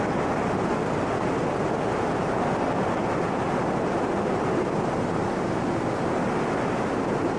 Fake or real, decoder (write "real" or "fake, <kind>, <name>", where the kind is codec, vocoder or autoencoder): real